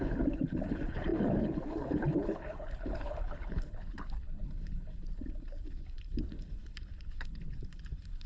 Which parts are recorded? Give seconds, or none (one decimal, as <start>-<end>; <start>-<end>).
none